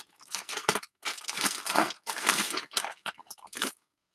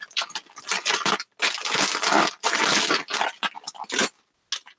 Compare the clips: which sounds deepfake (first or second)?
first